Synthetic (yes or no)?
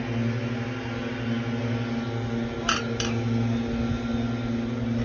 no